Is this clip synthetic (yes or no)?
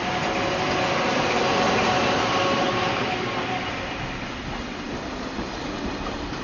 no